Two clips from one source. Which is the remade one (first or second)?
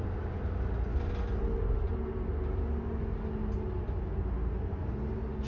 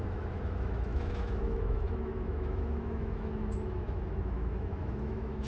second